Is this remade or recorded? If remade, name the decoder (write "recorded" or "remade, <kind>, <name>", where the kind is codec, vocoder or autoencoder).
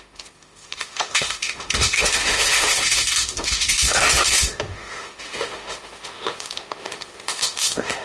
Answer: remade, autoencoder, DAC-VAE